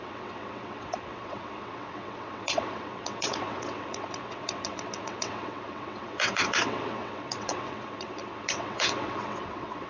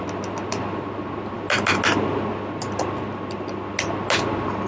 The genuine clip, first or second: second